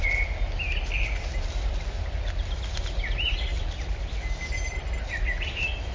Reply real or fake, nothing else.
real